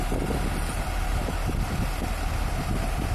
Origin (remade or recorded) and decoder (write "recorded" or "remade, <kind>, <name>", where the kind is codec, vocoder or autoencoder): recorded